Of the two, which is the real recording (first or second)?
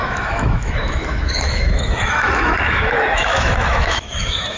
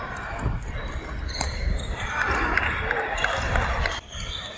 second